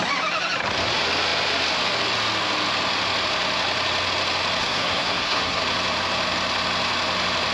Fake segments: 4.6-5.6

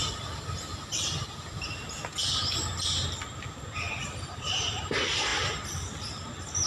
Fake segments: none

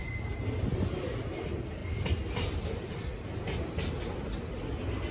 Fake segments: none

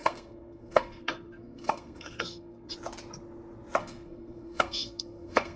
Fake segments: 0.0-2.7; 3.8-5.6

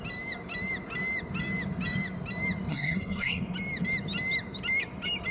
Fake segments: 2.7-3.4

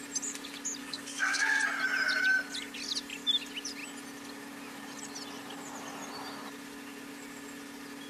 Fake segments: 0.8-1.6